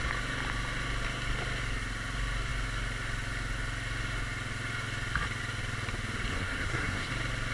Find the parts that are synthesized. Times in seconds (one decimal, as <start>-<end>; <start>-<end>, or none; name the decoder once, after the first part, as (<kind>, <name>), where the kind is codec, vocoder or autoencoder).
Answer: 6.3-7.1 (codec, SNAC)